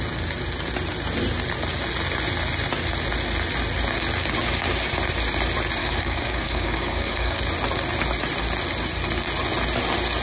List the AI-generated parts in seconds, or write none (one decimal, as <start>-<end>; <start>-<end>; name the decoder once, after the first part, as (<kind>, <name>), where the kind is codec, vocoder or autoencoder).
5.8-7.4 (codec, DAC)

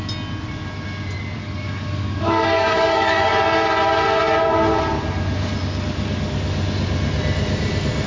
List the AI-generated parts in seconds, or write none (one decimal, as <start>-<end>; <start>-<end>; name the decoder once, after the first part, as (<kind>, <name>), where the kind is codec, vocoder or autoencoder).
1.4-3.3 (codec, DAC)

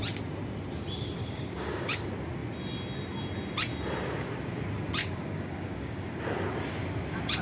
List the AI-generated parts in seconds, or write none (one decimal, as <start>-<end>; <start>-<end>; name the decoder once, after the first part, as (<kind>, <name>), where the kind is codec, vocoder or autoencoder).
1.2-1.8 (codec, DAC); 5.0-6.2

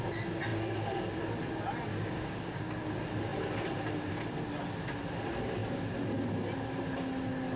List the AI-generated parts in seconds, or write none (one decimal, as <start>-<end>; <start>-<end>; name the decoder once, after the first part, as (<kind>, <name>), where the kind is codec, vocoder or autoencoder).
1.9-2.6 (codec, DAC)

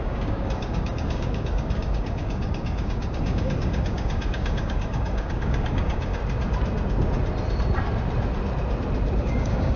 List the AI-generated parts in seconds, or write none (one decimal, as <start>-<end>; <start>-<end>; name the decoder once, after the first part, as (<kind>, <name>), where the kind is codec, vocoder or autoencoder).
0.0-6.2 (codec, DAC); 9.2-9.8